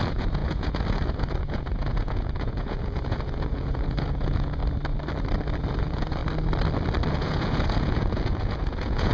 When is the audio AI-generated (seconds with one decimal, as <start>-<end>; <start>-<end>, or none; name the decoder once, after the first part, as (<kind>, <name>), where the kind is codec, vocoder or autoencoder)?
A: 0.0-4.6 (vocoder, Vocos); 5.7-6.2; 7.1-9.1